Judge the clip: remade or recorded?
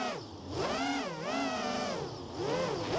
recorded